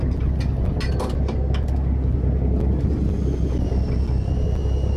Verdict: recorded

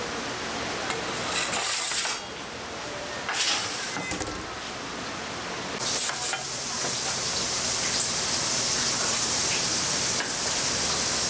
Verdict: recorded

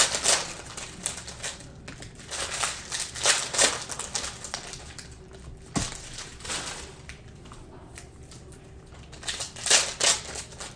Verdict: recorded